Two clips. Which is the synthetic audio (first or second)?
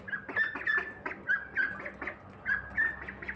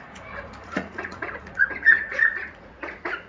second